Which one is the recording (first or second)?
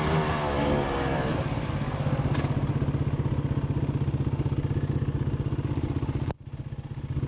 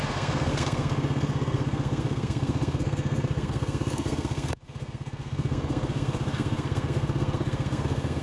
first